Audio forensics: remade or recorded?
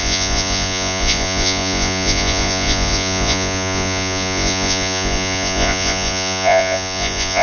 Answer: remade